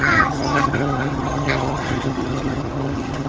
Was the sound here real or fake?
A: fake